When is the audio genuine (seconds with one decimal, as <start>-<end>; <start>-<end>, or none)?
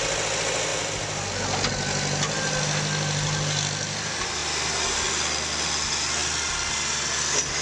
0.0-7.6